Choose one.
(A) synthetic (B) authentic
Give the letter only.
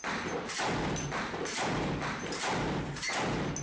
B